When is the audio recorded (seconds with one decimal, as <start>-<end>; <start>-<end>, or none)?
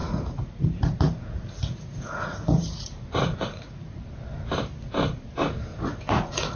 4.0-5.7